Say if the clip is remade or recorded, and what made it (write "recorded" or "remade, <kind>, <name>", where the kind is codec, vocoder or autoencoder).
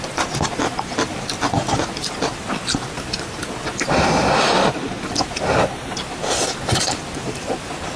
recorded